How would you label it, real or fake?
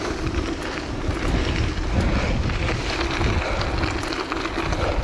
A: real